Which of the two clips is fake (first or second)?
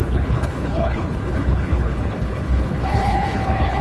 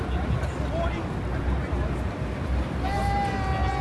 first